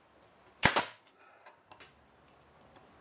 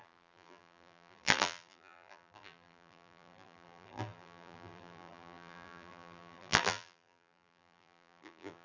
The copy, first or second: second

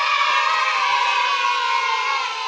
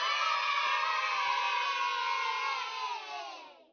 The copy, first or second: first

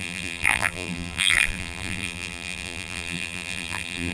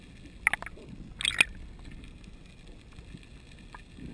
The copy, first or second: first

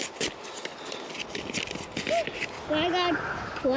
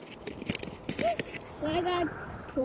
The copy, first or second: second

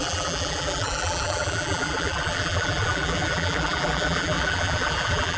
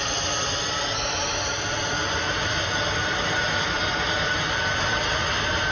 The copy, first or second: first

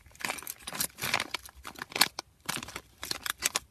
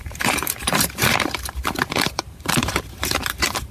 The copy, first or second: second